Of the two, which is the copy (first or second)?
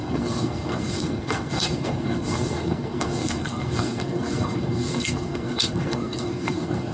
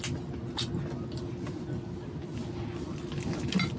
first